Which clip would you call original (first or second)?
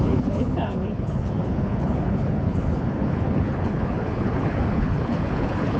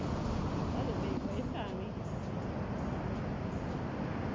second